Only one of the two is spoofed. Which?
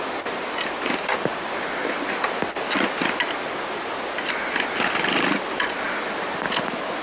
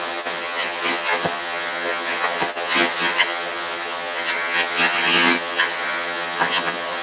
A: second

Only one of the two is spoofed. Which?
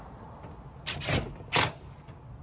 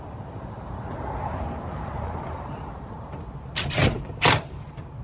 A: second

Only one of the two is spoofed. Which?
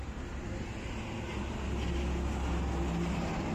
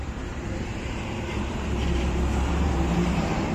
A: second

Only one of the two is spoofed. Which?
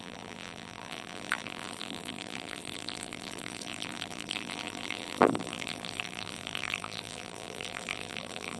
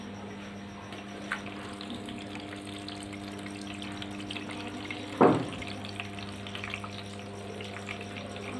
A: first